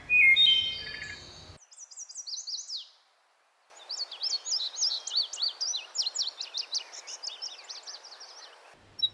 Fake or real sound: real